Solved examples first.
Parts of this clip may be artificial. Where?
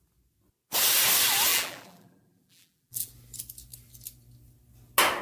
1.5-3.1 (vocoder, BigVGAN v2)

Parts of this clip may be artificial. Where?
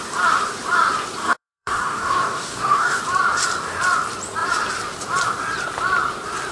1.2-3.0 (codec, DAC)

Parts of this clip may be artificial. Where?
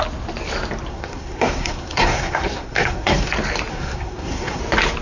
0.9-3.3 (codec, SNAC); 3.7-4.6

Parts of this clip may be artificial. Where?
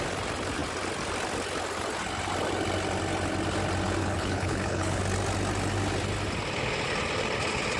4.0-5.0 (codec, HILCodec)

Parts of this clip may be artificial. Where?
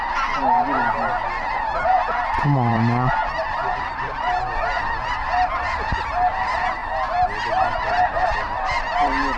2.7-4.4 (vocoder, BigVGAN v2)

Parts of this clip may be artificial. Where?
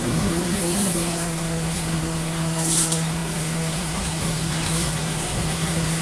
0.0-6.0 (codec, SNAC)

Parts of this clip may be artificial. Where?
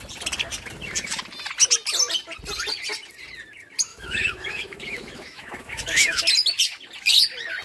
3.9-6.2 (autoencoder, DAC-VAE)